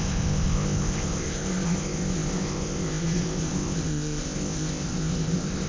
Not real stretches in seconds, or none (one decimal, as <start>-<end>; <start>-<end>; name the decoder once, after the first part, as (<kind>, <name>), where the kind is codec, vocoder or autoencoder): 0.0-5.7 (codec, ZipCodec)